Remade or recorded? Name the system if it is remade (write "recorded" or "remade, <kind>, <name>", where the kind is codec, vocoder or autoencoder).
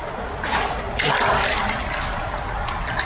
recorded